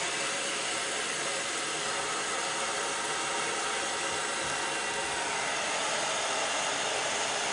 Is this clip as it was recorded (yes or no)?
yes